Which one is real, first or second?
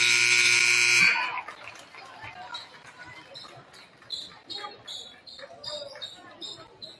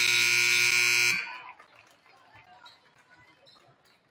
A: second